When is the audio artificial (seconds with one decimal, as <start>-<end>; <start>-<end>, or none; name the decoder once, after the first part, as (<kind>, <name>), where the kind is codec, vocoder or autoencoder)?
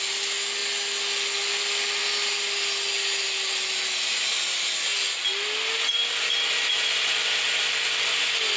none